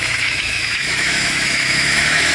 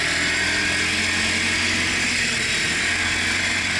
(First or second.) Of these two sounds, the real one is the second